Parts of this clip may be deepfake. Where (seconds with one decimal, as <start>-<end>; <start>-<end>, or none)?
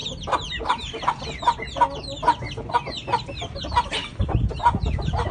none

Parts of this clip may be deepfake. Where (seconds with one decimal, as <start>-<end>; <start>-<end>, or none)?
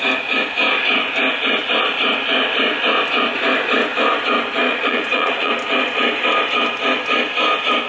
4.6-5.5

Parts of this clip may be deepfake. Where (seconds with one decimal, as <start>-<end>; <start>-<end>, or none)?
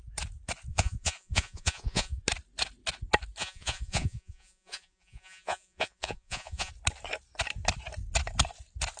0.7-2.2; 3.4-6.7